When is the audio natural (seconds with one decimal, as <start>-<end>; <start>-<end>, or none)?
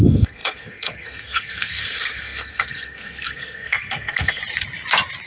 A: 4.4-5.3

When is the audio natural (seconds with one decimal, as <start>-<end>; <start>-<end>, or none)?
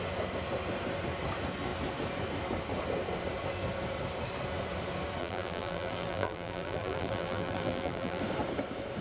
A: 0.0-5.2; 8.2-9.0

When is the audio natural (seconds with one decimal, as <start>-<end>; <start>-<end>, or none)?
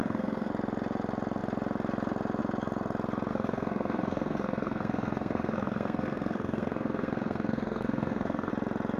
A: 0.5-3.3; 8.5-9.0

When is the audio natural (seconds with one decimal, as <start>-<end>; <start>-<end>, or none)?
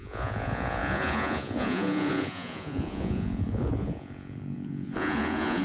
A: none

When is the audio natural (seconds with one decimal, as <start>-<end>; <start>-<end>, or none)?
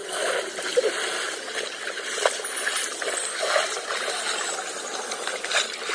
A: 0.0-3.5